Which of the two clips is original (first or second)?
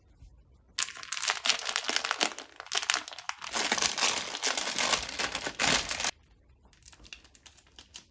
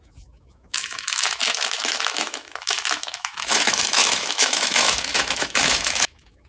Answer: first